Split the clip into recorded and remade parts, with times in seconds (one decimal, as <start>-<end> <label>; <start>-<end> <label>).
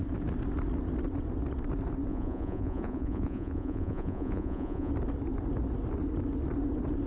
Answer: 0.0-2.1 recorded; 2.1-4.9 remade; 4.9-7.1 recorded